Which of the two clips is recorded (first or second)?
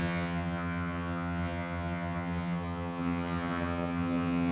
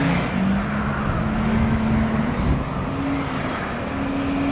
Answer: second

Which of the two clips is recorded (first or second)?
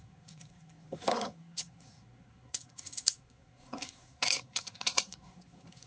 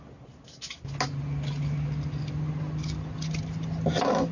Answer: second